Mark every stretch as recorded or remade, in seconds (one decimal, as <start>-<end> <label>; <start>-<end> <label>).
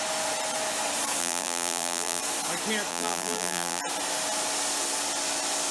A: 0.0-1.2 recorded; 1.2-2.2 remade; 2.2-2.9 recorded; 2.9-3.8 remade; 3.8-5.7 recorded